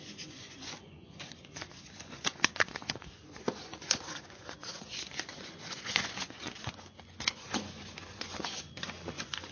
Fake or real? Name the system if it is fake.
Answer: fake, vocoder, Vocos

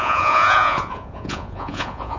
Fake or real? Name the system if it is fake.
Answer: fake, vocoder, Vocos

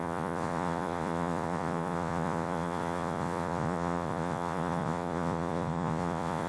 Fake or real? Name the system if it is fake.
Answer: fake, vocoder, Vocos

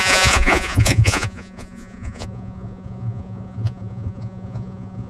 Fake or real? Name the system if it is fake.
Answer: fake, vocoder, Vocos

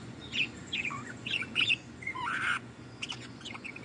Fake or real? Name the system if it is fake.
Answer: fake, vocoder, Vocos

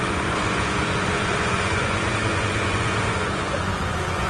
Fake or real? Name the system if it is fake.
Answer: fake, vocoder, Vocos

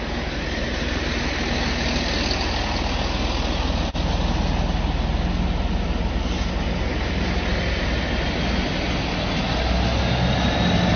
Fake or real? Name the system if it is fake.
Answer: real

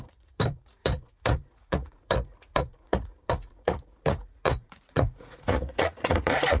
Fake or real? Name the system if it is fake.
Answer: fake, vocoder, Vocos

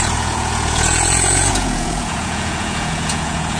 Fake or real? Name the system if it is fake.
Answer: fake, vocoder, Vocos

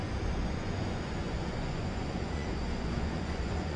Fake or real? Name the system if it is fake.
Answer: fake, vocoder, Vocos